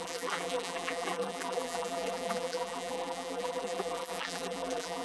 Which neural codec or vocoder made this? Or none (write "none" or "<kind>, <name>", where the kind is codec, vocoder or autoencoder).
vocoder, BigVGAN v2